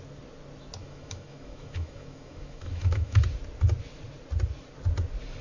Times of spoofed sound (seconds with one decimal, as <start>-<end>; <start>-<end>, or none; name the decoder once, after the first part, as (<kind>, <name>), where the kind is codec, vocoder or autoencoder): 0.8-3.2 (autoencoder, DAC-VAE)